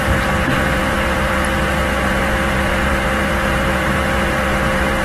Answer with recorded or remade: remade